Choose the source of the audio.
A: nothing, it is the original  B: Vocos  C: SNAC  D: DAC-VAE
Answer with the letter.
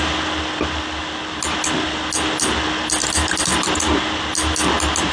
A